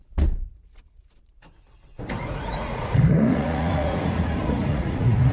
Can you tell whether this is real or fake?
fake